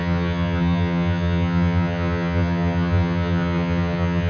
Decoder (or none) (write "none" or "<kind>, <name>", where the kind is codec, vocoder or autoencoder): vocoder, HiFi-GAN